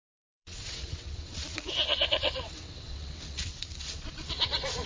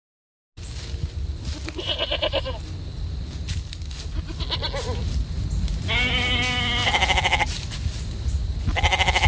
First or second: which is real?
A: second